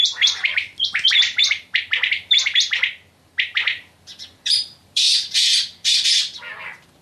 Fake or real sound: fake